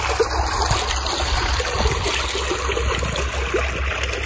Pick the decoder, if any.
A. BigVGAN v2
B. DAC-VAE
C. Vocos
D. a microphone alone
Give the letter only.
D